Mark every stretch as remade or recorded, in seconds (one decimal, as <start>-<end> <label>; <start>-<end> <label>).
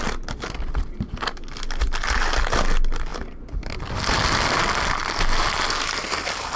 0.0-6.6 recorded